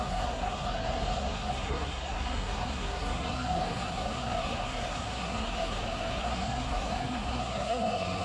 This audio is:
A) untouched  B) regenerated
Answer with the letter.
B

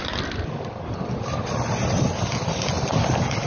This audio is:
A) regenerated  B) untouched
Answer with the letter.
B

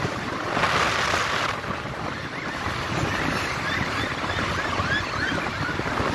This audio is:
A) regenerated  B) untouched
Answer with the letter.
B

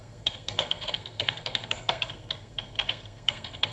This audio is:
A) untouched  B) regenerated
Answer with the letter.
B